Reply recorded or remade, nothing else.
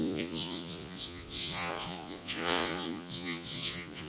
remade